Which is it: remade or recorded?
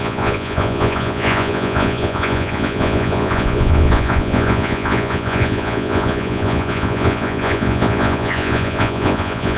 remade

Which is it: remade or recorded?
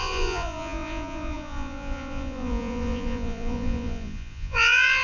remade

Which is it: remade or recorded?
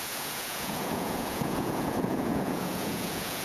remade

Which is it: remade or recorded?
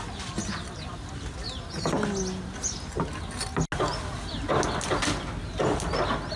recorded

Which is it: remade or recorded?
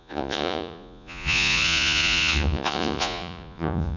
remade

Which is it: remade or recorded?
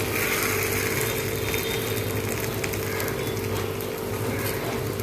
recorded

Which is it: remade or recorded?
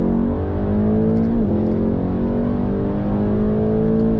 recorded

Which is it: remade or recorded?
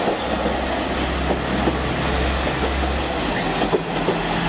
recorded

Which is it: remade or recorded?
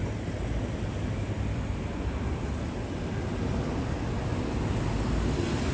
recorded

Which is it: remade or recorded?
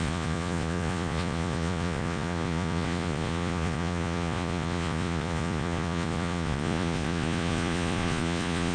remade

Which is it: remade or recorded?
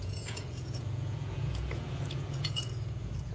remade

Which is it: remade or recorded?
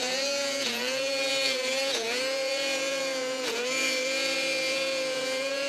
remade